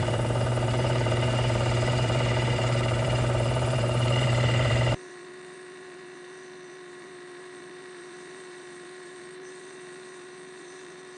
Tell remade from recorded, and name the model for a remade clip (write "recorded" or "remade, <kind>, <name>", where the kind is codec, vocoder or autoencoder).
remade, vocoder, BigVGAN v2